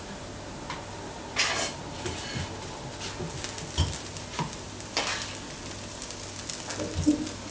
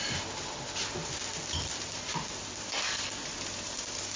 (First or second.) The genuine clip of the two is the first